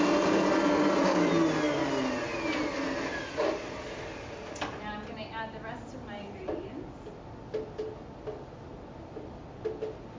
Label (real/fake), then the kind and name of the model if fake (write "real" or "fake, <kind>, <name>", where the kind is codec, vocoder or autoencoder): real